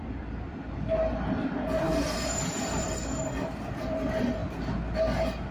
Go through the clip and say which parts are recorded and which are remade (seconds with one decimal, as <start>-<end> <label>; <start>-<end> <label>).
0.0-1.9 recorded; 1.9-2.8 remade; 2.8-5.5 recorded